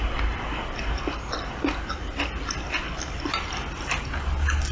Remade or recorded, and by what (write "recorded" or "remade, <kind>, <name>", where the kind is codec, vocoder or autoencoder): recorded